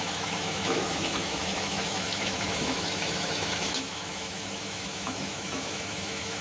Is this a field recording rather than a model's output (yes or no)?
no